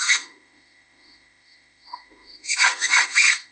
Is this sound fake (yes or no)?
yes